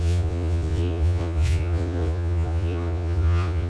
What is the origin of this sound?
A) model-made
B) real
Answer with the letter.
A